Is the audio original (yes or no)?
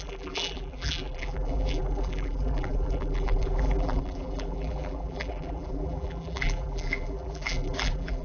no